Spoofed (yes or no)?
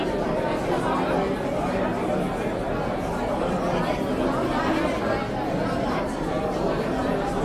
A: no